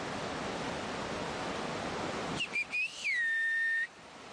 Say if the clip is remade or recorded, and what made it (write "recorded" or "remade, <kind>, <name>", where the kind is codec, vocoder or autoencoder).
recorded